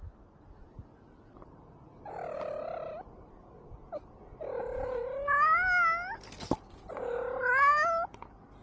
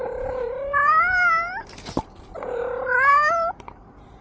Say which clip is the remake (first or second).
second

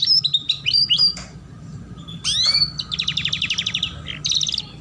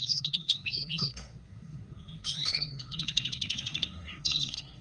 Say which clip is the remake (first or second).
second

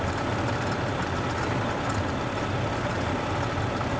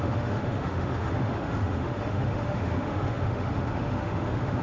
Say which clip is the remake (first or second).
second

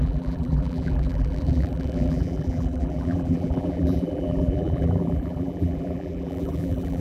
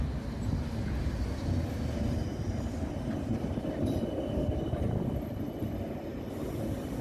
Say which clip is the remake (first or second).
first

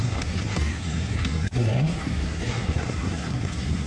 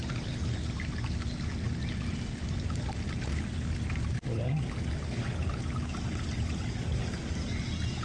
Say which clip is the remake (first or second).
first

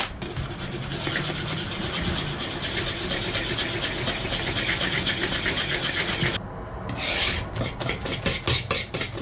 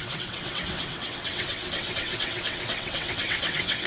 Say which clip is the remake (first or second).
second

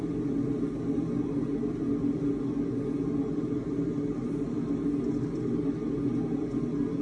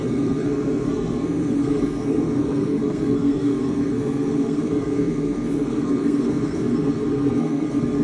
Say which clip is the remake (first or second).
second